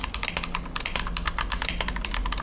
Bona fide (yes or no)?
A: yes